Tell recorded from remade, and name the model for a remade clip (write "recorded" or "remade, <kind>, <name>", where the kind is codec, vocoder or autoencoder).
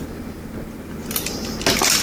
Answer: recorded